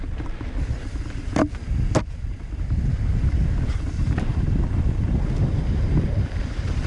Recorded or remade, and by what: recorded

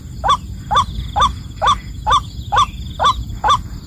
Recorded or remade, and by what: recorded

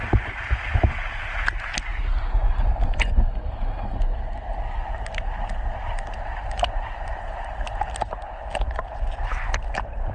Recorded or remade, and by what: recorded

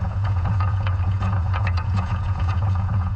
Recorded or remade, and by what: remade, vocoder, Vocos